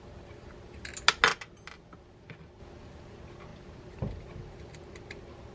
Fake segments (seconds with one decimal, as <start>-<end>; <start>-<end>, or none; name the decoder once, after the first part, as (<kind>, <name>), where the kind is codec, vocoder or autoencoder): none